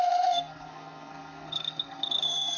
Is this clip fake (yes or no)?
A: yes